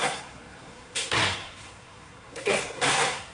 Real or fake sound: fake